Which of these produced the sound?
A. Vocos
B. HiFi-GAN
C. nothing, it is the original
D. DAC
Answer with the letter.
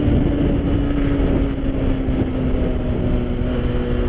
C